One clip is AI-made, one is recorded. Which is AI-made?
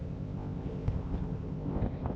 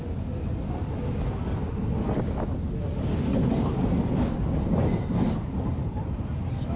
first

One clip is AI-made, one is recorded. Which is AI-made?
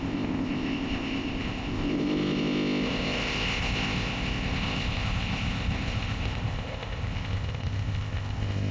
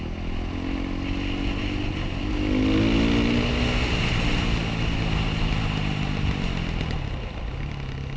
first